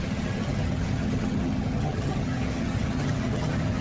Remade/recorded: remade